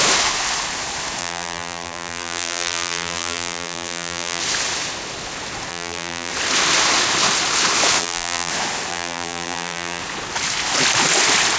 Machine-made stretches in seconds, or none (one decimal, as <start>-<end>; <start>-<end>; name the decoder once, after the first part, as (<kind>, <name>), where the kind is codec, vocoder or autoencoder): 1.2-4.4 (vocoder, BigVGAN v2); 5.7-6.3; 8.0-8.5; 8.9-10.0